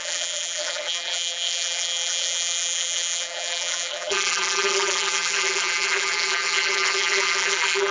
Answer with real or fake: fake